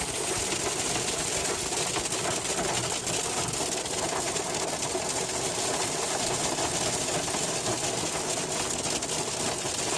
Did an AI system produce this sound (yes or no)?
no